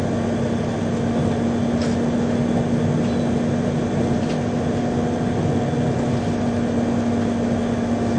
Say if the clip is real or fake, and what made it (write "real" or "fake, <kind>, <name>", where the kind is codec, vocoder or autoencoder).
real